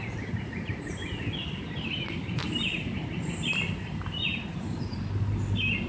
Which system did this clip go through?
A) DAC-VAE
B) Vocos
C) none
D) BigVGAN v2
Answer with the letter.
C